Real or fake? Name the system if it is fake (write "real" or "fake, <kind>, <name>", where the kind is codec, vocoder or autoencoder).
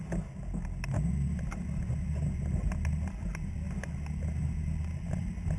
real